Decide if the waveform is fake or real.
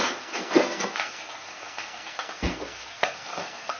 fake